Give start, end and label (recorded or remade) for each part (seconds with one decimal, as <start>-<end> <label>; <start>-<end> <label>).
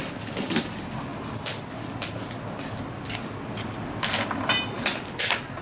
0.0-5.6 recorded